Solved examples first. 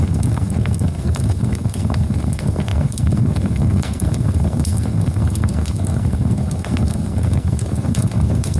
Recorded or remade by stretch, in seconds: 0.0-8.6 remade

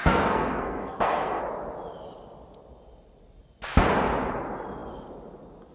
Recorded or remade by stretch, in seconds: 0.0-1.4 remade; 1.4-5.7 recorded

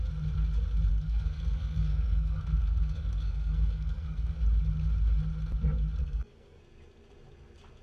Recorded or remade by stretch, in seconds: 0.0-0.9 recorded; 0.9-4.4 remade; 4.4-6.0 recorded; 6.0-6.6 remade; 6.6-7.8 recorded

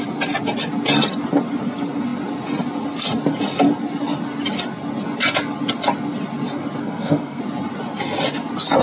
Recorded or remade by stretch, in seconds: 0.0-6.8 recorded; 6.8-7.4 remade; 7.4-8.8 recorded

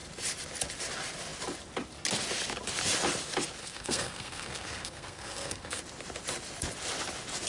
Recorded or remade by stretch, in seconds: 0.0-3.6 recorded; 3.6-5.8 remade; 5.8-7.5 recorded

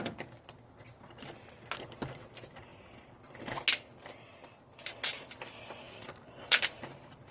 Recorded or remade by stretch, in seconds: 0.0-5.8 recorded; 5.8-6.6 remade; 6.6-7.3 recorded

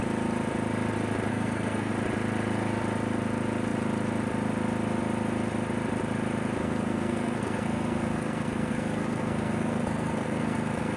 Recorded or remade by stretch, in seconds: 0.0-1.3 recorded; 1.3-1.9 remade; 1.9-6.6 recorded; 6.6-11.0 remade